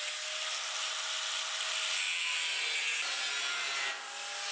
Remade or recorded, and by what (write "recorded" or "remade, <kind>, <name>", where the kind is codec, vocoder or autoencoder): recorded